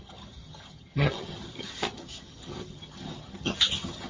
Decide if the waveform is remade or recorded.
remade